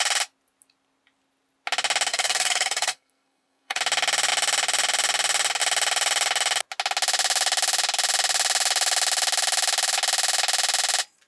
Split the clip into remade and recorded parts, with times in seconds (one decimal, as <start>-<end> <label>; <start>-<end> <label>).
0.0-2.1 recorded; 2.1-3.8 remade; 3.8-11.3 recorded